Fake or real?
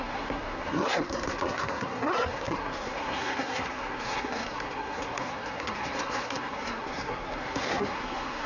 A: fake